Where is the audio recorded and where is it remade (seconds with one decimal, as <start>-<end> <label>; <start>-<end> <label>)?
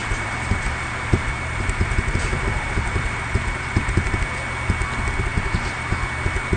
0.0-4.0 remade; 4.0-5.3 recorded; 5.3-5.9 remade; 5.9-6.6 recorded